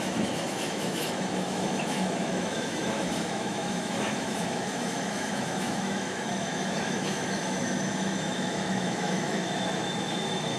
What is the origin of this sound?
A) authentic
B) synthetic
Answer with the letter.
B